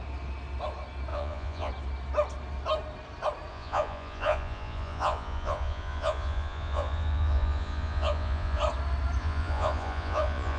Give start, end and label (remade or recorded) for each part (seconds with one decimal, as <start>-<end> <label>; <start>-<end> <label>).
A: 0.0-1.1 recorded; 1.1-1.7 remade; 1.7-3.5 recorded; 3.5-8.6 remade; 8.6-9.2 recorded; 9.2-10.6 remade